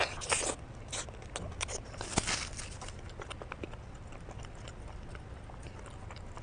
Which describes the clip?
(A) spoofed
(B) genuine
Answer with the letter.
B